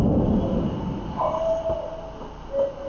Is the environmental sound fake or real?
real